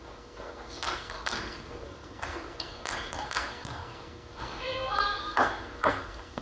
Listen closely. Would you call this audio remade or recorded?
remade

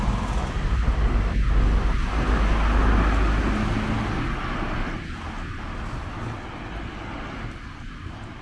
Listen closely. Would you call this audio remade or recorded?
recorded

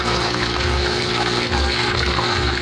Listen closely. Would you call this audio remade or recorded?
remade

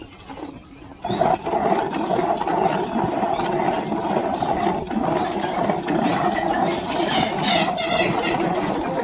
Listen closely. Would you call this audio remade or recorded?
recorded